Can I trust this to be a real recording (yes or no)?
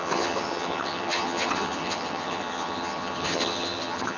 no